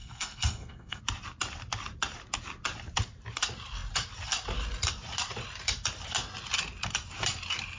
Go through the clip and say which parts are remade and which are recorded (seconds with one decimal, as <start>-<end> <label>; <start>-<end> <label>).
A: 0.0-1.0 remade; 1.0-7.8 recorded

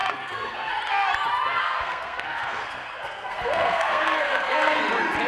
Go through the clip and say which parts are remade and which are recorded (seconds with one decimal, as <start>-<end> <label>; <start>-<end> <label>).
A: 0.0-0.7 remade; 0.7-1.6 recorded; 1.6-4.8 remade; 4.8-5.3 recorded

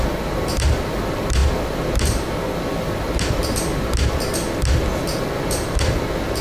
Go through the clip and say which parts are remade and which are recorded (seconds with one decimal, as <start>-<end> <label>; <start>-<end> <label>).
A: 0.0-6.4 recorded

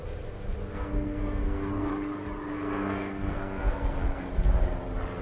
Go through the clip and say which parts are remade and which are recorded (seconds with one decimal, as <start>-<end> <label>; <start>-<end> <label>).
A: 0.0-0.7 recorded; 0.7-1.9 remade; 1.9-2.5 recorded; 2.5-4.2 remade; 4.2-5.2 recorded

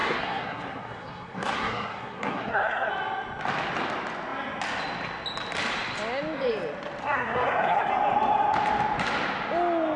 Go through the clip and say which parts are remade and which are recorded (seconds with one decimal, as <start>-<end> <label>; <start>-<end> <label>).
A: 0.0-2.9 remade; 2.9-7.0 recorded; 7.0-7.9 remade; 7.9-10.0 recorded

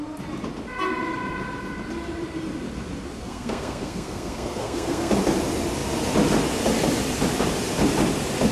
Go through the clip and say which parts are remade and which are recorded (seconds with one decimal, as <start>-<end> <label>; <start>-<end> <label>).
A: 0.0-3.2 recorded; 3.2-5.1 remade; 5.1-8.5 recorded

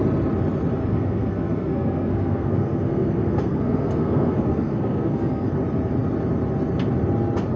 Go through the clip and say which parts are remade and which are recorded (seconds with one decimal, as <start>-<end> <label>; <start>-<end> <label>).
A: 0.0-0.9 recorded; 0.9-5.5 remade; 5.5-7.6 recorded